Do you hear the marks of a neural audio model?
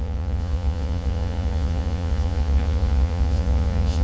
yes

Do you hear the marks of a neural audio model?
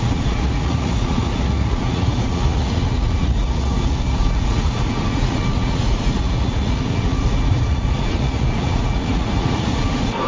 yes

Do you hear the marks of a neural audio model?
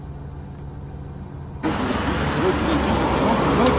no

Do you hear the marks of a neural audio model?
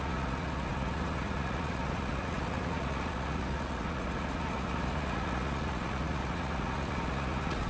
yes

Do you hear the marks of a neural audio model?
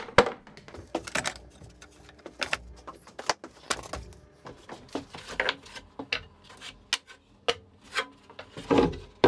no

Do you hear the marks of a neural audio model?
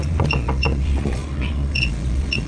yes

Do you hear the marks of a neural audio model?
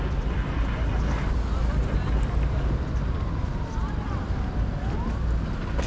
no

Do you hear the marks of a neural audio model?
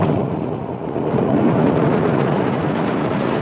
yes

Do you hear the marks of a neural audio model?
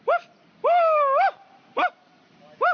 no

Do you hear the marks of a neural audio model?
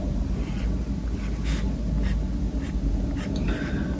no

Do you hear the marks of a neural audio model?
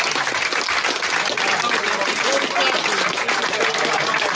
no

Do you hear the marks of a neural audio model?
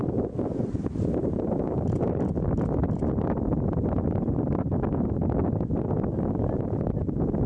no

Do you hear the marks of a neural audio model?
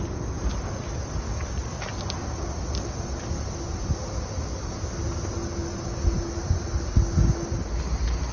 no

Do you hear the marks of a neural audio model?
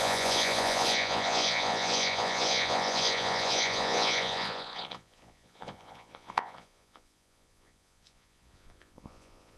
yes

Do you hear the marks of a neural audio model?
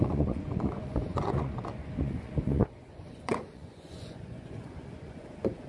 yes